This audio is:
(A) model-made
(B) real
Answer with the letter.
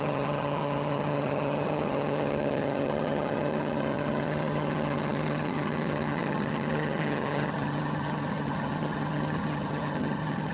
A